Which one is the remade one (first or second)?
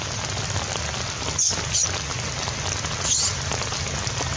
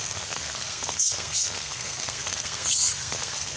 second